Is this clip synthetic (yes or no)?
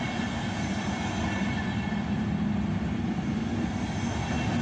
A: no